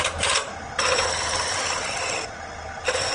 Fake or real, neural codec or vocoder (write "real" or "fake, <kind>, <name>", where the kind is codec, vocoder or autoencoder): real